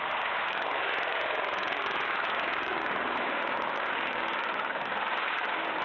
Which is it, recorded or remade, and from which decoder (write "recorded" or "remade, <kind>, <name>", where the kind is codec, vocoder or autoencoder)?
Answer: remade, codec, DAC